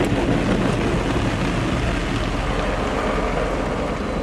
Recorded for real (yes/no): yes